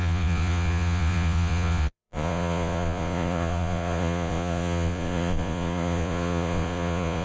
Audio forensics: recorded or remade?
remade